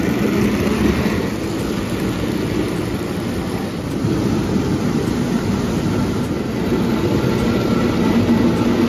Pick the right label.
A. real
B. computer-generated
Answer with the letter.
A